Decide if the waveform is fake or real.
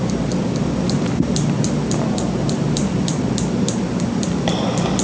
fake